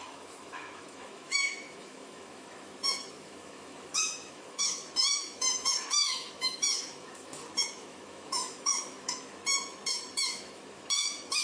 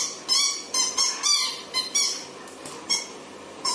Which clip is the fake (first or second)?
first